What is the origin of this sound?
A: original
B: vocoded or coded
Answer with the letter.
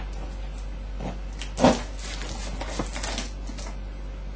A